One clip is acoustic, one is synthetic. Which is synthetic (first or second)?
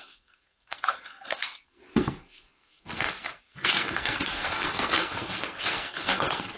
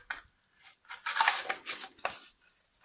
first